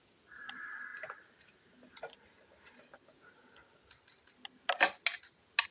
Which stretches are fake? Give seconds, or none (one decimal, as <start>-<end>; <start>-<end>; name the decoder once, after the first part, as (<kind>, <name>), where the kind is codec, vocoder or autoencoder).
none